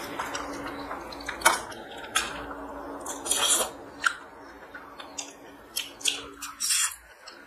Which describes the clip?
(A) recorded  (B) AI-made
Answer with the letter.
A